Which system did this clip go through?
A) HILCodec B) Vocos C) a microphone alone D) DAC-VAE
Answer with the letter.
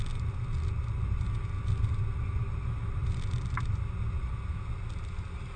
C